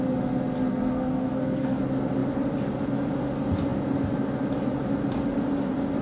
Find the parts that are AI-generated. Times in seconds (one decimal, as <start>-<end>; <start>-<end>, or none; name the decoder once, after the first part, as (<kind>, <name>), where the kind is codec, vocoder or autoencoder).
0.7-1.8 (codec, SNAC)